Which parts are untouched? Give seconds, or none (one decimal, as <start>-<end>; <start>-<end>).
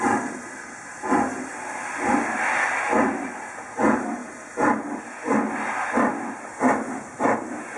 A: 0.0-7.8